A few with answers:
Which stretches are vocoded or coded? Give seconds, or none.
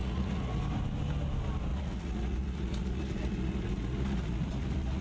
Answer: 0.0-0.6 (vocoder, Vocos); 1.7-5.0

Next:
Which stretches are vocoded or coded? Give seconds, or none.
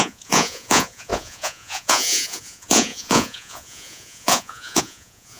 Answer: 0.0-5.4 (vocoder, Vocos)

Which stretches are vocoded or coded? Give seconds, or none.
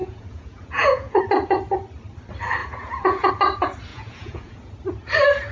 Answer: 0.0-1.2 (vocoder, Vocos); 2.6-3.3; 3.9-4.7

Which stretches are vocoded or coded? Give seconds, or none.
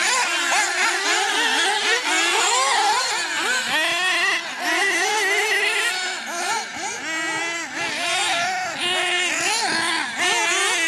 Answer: none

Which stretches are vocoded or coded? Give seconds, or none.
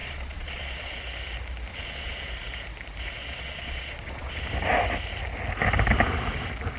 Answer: 0.0-1.0 (vocoder, Vocos); 1.7-2.3; 3.2-4.4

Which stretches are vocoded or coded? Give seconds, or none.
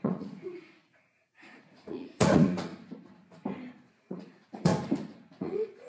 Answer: 0.0-2.7 (vocoder, Vocos); 3.9-4.7; 5.3-5.9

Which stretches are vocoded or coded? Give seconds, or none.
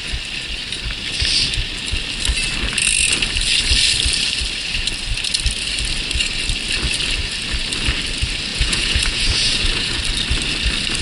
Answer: 8.5-10.0 (vocoder, Vocos)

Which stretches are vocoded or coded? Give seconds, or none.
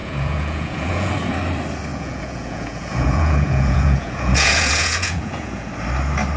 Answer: 0.0-1.1 (vocoder, Vocos); 1.9-5.7